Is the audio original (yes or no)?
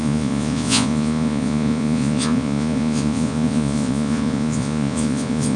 no